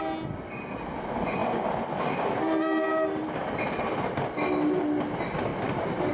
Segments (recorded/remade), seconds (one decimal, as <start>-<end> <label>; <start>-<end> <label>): 0.0-6.1 recorded